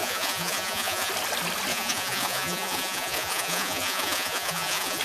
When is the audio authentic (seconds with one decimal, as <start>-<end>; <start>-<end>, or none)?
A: 1.1-1.7